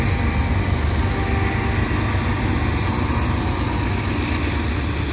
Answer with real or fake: real